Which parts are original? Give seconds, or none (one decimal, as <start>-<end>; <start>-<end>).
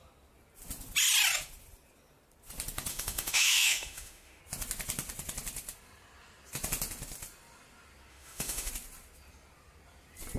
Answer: 0.0-2.9; 4.4-8.1; 8.7-10.4